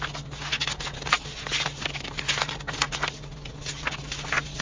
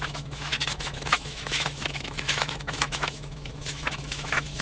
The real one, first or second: first